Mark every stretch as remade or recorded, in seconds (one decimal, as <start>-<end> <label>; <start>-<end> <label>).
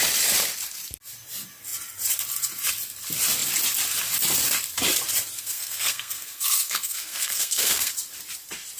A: 0.0-5.4 recorded; 5.4-7.9 remade; 7.9-8.8 recorded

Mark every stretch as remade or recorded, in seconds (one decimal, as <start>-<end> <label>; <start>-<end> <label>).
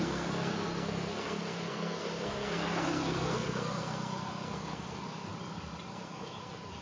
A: 0.0-5.3 remade; 5.3-5.9 recorded; 5.9-6.8 remade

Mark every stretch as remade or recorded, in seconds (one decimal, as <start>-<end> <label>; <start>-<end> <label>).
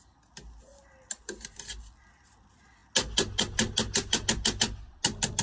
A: 0.0-5.4 recorded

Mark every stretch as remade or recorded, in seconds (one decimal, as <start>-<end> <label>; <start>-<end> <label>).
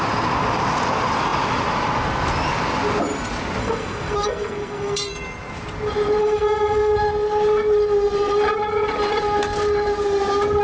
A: 0.0-3.6 recorded; 3.6-5.1 remade; 5.1-6.2 recorded; 6.2-6.9 remade; 6.9-10.6 recorded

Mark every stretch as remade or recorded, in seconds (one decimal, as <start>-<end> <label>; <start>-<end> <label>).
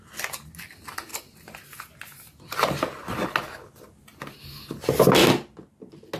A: 0.0-6.2 recorded